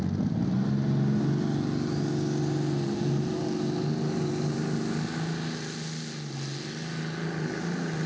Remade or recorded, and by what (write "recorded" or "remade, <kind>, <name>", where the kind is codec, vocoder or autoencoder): recorded